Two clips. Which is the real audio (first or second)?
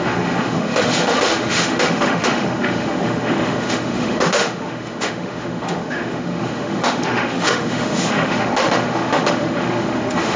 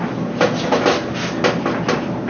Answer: second